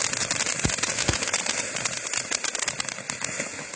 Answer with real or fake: real